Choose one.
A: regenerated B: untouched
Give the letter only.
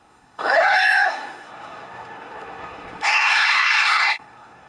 A